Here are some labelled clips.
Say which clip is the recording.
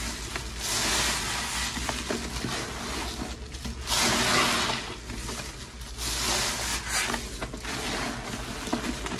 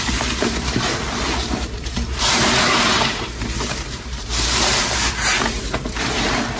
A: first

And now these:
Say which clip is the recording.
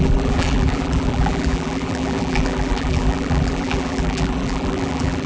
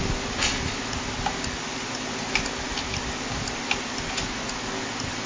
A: second